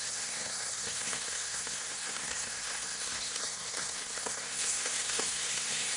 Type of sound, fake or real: fake